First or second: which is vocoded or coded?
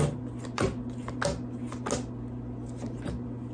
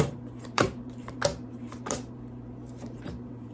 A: second